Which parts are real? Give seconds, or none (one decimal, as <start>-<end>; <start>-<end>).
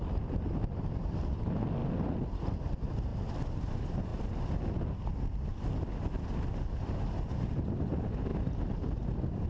1.8-2.5; 3.1-3.6; 4.1-7.2